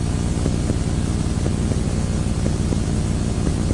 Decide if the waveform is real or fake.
real